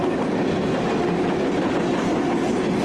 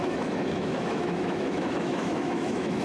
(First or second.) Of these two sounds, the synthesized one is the second